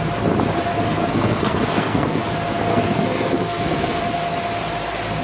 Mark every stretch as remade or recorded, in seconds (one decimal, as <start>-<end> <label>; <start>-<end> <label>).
0.0-1.0 recorded; 1.0-2.2 remade; 2.2-2.7 recorded; 2.7-4.0 remade; 4.0-5.2 recorded